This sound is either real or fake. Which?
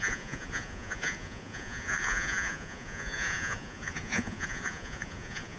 fake